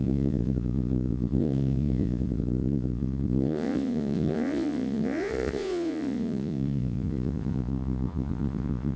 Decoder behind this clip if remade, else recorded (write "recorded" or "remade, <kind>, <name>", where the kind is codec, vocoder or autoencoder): remade, vocoder, Vocos